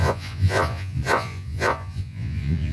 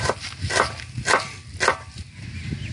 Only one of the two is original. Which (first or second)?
second